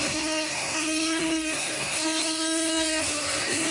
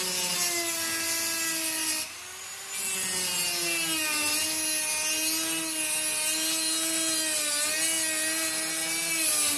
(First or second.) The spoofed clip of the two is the first